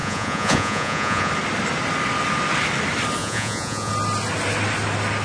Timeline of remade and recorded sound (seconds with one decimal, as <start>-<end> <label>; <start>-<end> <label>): 0.0-1.3 remade; 1.3-3.2 recorded; 3.2-3.9 remade; 3.9-5.2 recorded